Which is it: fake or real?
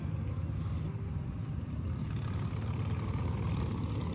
real